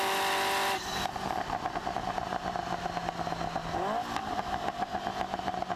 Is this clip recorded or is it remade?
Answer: recorded